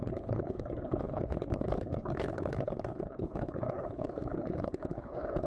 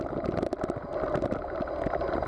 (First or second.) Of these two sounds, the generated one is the first